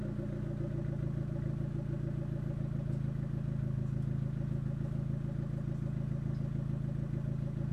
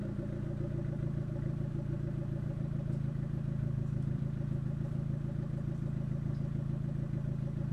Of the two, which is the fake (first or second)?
second